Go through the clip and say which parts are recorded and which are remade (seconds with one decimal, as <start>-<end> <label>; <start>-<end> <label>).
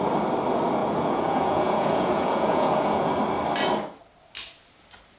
0.0-0.8 recorded; 0.8-3.1 remade; 3.1-5.2 recorded